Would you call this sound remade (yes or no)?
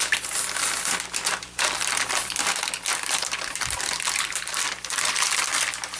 yes